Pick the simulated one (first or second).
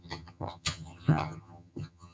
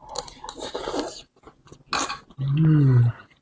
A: first